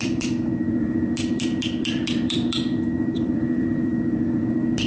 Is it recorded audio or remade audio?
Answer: remade